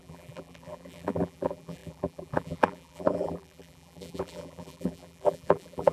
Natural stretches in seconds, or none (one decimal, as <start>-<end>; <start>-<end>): none